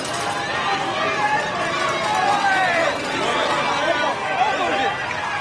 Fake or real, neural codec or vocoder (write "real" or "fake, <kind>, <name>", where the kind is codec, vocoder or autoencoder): real